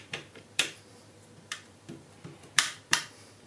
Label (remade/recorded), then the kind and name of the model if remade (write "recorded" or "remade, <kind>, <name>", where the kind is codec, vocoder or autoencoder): remade, vocoder, BigVGAN v2